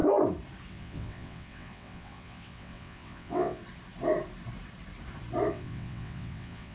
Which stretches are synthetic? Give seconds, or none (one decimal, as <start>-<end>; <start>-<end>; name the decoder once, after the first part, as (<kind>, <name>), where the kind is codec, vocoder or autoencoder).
0.7-3.6 (vocoder, WaveNeXt); 5.5-6.7